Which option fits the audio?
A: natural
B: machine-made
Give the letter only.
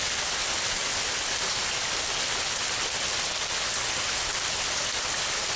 A